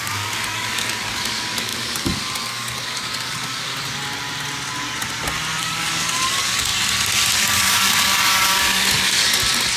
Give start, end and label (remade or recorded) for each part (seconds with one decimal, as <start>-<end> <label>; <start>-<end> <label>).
0.0-3.7 remade; 3.7-5.6 recorded; 5.6-6.7 remade; 6.7-7.4 recorded; 7.4-9.2 remade; 9.2-9.8 recorded